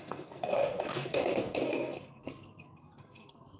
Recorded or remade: remade